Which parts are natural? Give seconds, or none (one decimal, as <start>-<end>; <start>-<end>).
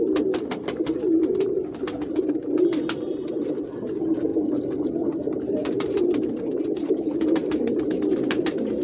0.0-8.8